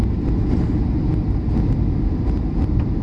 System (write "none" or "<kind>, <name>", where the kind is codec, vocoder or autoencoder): none